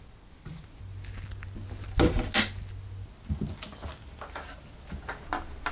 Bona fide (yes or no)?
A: yes